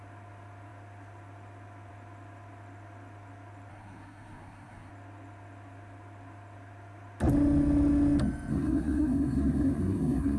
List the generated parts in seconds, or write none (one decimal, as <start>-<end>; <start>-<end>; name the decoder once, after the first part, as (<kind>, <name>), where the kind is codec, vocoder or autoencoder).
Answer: 3.7-4.9 (codec, SNAC); 8.5-10.4